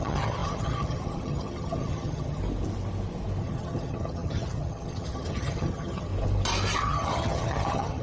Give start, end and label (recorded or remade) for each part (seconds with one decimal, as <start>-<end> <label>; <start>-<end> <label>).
0.0-2.4 remade; 2.4-3.4 recorded; 3.4-6.1 remade; 6.1-6.8 recorded; 6.8-8.0 remade